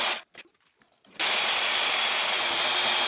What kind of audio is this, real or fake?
real